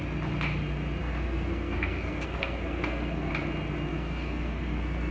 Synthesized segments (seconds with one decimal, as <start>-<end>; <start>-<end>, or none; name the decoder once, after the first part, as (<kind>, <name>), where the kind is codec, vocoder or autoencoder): 1.0-3.3 (codec, SNAC); 3.9-5.1